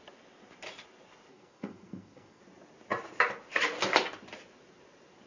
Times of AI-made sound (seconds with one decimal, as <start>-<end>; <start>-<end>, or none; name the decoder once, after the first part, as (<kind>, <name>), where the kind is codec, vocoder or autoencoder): 1.3-2.4 (codec, SNAC)